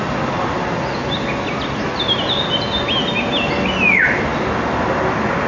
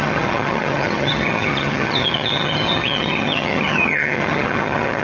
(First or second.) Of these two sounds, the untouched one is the first